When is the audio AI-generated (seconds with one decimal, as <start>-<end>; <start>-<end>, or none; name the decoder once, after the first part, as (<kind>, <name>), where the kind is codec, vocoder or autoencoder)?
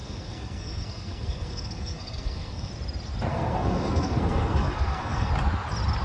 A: 0.0-2.7 (codec, SNAC); 3.3-5.3